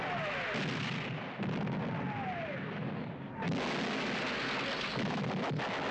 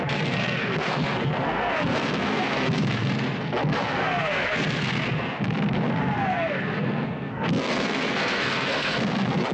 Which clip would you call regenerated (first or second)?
second